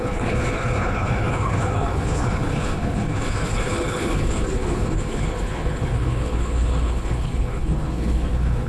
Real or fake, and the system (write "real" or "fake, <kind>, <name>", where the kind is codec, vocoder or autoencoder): fake, codec, HILCodec